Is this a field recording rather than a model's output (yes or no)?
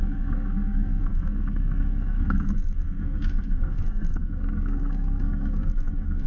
no